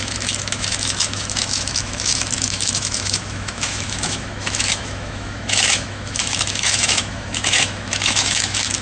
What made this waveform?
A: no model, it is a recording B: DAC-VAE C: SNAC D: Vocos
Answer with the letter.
B